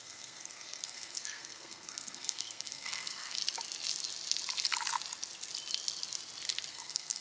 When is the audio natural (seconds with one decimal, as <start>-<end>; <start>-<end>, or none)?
3.4-6.7